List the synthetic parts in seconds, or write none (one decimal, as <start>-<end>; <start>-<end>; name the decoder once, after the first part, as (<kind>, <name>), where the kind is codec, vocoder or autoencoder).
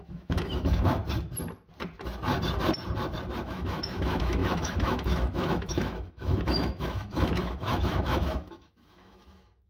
0.0-1.0 (autoencoder, DAC-VAE); 3.4-9.7